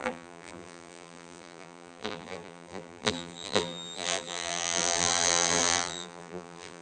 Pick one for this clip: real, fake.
fake